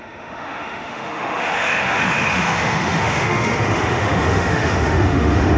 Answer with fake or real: fake